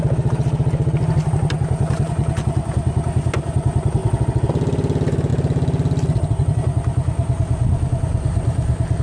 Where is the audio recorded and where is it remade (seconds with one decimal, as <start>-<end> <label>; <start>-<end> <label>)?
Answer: 0.0-9.0 recorded